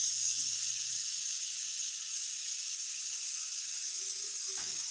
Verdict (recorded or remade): remade